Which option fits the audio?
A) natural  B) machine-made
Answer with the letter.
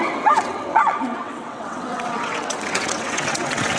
B